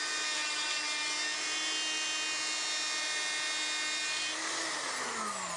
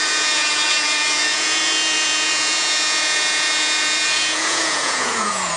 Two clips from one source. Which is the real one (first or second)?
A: first